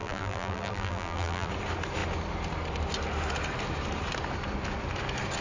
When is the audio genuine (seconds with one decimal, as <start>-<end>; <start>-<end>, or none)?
1.5-5.4